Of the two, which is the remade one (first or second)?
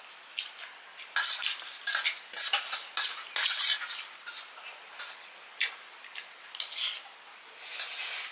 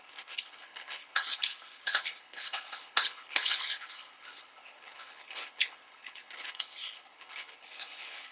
second